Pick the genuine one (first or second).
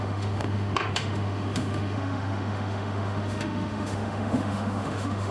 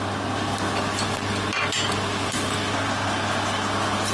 second